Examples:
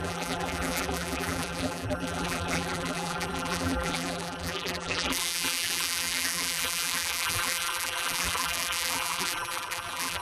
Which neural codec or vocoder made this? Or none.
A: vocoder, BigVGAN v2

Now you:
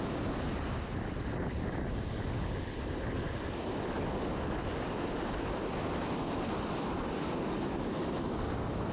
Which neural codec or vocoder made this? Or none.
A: none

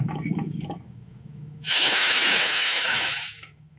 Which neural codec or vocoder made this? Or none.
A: autoencoder, DAC-VAE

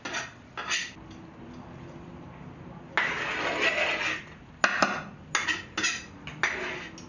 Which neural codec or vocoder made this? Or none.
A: none